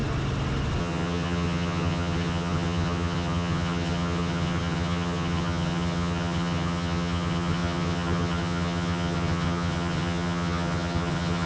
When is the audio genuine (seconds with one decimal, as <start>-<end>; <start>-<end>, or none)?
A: 0.0-0.8